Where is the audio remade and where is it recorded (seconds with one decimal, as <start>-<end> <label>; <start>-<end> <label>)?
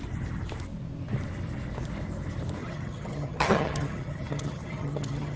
0.0-2.6 recorded; 2.6-5.4 remade